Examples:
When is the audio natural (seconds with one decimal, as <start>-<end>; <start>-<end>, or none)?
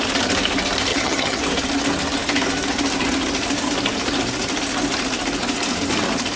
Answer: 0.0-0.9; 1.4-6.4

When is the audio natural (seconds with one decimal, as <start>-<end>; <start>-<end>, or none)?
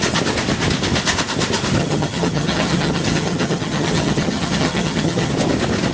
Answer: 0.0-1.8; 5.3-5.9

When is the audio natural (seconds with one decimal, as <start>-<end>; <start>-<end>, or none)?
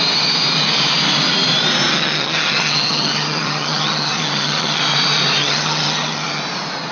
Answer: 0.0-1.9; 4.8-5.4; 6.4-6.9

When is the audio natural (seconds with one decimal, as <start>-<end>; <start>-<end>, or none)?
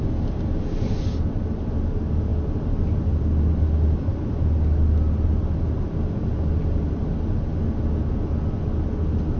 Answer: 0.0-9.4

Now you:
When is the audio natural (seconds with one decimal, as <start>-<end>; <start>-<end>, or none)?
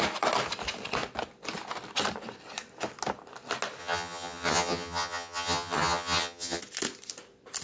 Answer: 0.0-3.8; 6.6-7.6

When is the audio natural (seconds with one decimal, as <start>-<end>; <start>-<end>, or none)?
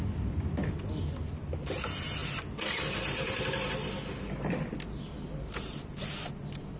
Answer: 0.0-6.8